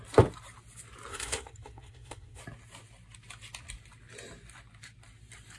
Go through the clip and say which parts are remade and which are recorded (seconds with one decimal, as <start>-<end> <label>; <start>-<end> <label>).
0.0-1.1 recorded; 1.1-2.4 remade; 2.4-5.6 recorded